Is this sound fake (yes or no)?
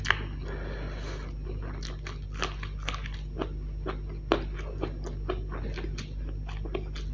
no